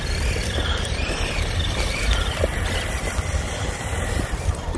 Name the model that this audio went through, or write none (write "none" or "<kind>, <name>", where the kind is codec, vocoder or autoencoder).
vocoder, BigVGAN v2